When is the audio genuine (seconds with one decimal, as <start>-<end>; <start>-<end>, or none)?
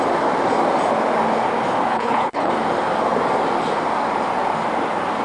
0.0-1.9; 2.5-5.2